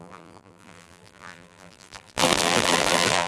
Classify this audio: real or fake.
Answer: fake